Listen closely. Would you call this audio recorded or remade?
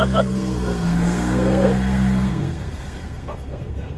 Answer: remade